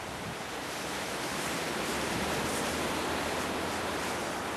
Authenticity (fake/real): real